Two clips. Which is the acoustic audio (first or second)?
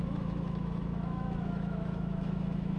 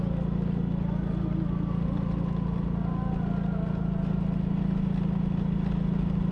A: second